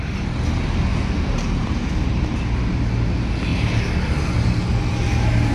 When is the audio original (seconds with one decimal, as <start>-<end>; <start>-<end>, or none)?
0.0-0.9; 2.4-5.5